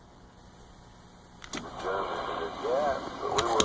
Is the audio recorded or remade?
recorded